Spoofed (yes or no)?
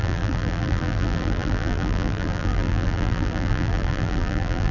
yes